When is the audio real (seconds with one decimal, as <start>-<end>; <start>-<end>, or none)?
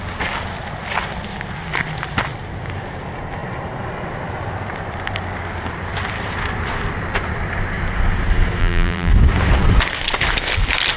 0.0-8.6; 9.1-11.0